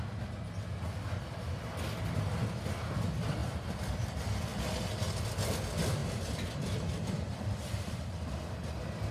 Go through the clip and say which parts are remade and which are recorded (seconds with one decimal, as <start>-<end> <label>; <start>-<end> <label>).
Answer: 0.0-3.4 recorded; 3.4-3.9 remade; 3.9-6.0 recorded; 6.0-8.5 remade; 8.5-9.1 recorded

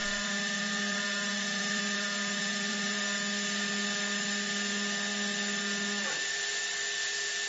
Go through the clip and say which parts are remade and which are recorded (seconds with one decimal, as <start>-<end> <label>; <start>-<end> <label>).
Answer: 0.0-3.0 remade; 3.0-7.5 recorded

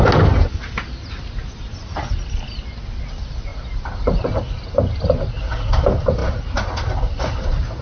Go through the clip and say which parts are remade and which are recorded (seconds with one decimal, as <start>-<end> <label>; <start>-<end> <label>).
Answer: 0.0-7.8 recorded

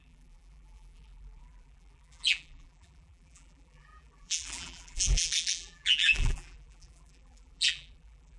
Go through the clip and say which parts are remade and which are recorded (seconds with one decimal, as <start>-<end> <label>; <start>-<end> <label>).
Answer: 0.0-8.4 remade